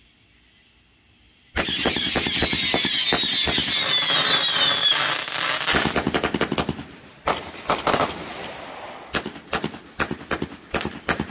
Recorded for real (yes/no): yes